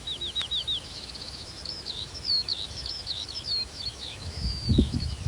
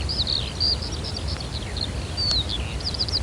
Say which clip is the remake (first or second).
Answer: first